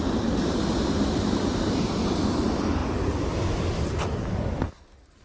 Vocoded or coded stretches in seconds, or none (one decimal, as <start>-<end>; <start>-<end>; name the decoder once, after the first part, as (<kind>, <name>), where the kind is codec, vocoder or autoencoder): none